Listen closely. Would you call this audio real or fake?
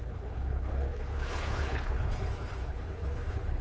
fake